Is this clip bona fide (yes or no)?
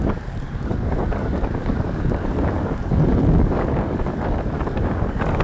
no